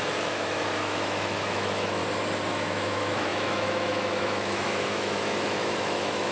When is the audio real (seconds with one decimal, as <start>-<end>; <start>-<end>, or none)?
2.0-2.5